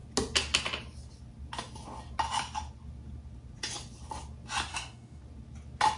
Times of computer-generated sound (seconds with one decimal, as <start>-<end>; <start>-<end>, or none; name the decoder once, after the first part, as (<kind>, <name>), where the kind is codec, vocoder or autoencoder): 4.7-5.2 (autoencoder, DAC-VAE)